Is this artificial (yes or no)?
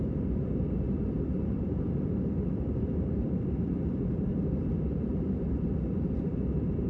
yes